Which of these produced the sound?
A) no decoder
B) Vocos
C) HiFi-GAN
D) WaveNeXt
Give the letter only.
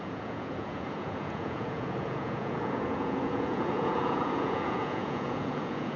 B